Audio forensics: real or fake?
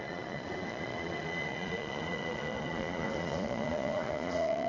fake